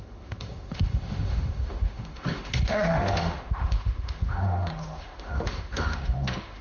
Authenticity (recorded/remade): remade